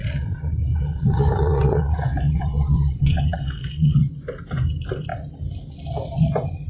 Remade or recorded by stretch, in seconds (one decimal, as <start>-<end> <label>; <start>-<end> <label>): 0.0-4.0 remade; 4.0-6.7 recorded